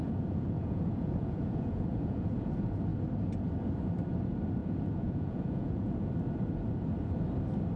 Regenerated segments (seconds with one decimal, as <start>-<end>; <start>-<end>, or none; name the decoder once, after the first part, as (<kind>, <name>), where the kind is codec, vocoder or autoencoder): 0.0-2.5 (vocoder, Vocos); 4.6-6.1